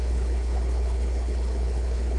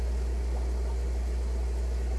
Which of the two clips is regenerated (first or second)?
first